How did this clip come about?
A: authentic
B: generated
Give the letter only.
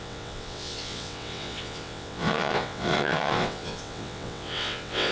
B